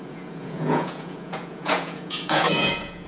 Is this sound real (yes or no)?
no